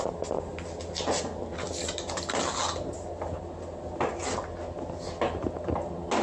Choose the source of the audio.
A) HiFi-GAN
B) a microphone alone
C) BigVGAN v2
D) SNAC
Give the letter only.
B